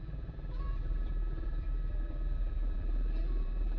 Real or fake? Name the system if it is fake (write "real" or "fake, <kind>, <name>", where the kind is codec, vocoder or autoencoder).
fake, vocoder, BigVGAN v2